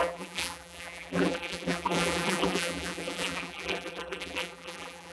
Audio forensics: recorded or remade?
remade